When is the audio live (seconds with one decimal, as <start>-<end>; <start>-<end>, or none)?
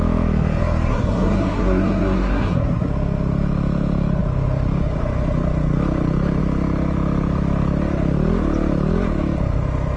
0.0-0.9; 2.9-10.0